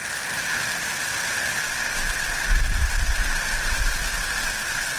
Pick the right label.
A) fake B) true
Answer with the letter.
B